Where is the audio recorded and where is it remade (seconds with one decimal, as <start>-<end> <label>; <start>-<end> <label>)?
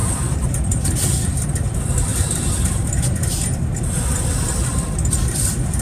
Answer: 0.0-0.6 remade; 0.6-2.1 recorded; 2.1-3.6 remade; 3.6-5.8 recorded